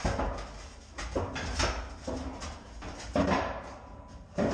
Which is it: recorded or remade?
recorded